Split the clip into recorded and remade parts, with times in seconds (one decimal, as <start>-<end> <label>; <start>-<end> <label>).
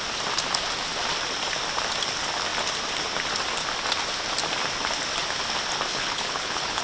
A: 0.0-5.9 recorded; 5.9-6.8 remade